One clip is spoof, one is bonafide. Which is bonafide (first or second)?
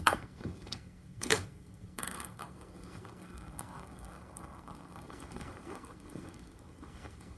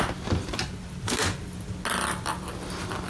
second